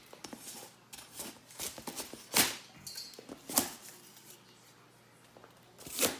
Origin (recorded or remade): recorded